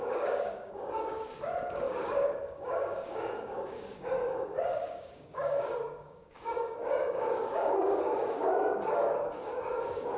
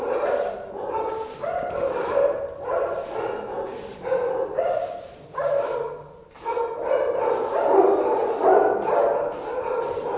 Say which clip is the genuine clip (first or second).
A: second